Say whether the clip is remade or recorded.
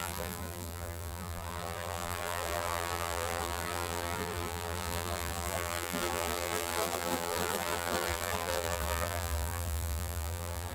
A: remade